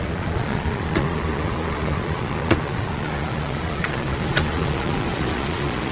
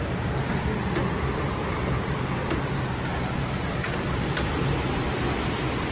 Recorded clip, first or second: second